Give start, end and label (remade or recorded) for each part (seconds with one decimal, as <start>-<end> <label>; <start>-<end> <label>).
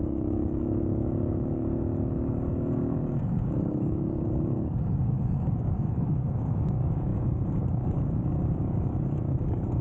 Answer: 0.0-9.8 remade